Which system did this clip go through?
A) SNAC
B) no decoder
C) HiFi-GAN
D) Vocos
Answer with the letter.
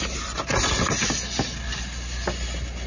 B